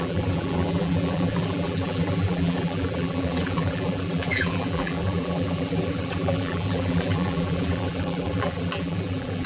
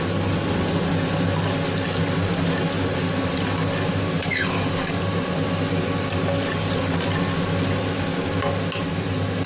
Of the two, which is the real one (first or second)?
second